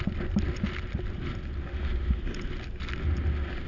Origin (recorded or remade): recorded